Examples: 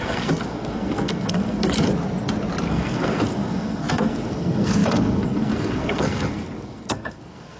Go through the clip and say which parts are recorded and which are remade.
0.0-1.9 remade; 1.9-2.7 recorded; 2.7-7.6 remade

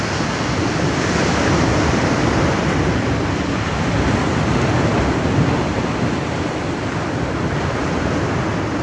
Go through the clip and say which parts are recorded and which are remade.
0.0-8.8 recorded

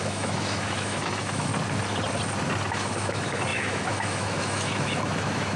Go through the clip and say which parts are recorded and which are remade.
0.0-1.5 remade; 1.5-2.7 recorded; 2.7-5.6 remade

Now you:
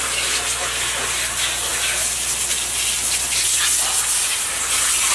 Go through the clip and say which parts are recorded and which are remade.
0.0-5.1 recorded

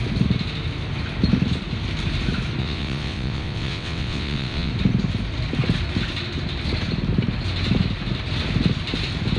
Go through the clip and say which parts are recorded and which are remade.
0.0-2.6 recorded; 2.6-4.7 remade; 4.7-9.4 recorded